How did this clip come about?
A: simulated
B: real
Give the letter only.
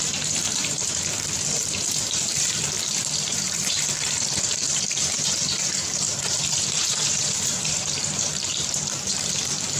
A